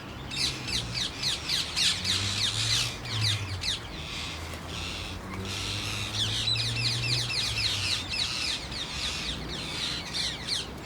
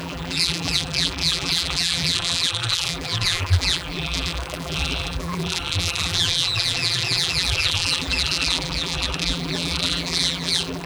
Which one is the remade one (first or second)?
second